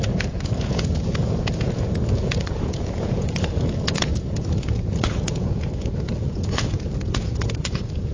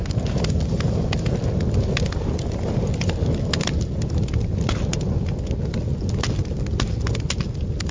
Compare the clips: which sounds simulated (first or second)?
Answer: first